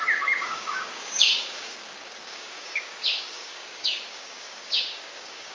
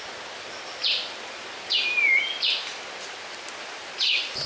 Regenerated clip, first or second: first